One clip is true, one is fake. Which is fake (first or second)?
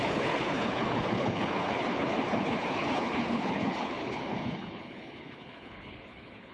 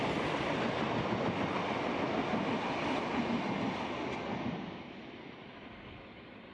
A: first